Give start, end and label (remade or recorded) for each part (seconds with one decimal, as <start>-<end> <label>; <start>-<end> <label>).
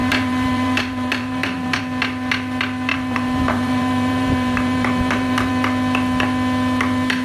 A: 0.0-1.8 remade; 1.8-2.9 recorded; 2.9-5.5 remade; 5.5-7.2 recorded